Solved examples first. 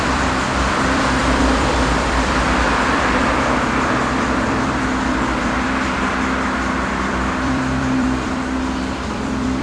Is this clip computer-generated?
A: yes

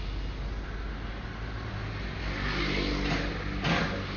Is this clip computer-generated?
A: no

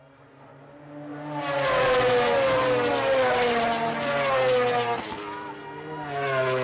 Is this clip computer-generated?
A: no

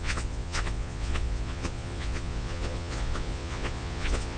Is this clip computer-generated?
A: yes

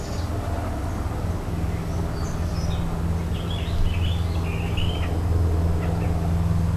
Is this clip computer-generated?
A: no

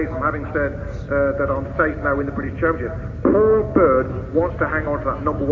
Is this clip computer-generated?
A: no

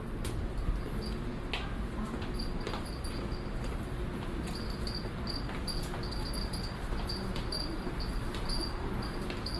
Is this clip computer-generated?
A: no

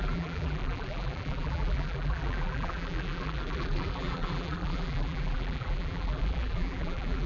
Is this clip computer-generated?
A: yes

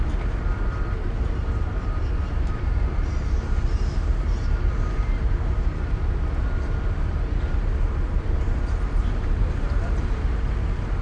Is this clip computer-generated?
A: yes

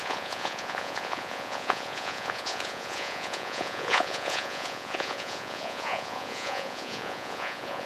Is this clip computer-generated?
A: yes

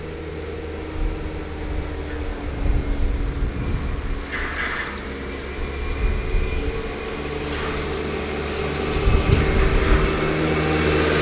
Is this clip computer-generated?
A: no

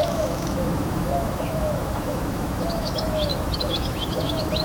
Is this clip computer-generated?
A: yes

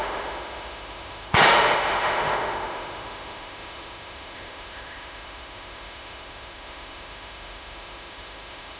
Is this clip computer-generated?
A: yes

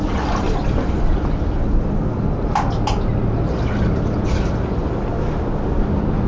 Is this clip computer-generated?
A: no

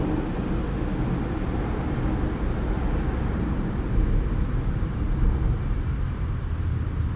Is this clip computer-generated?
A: no